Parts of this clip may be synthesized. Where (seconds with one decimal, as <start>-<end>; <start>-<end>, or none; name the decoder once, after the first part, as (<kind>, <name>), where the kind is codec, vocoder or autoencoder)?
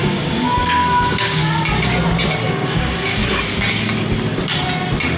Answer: 0.0-1.4 (codec, DAC); 2.5-3.2